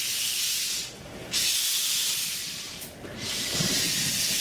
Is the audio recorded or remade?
remade